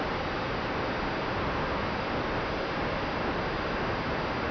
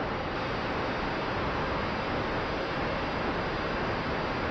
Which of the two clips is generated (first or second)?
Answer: first